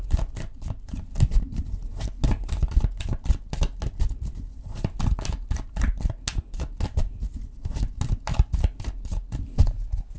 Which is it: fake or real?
real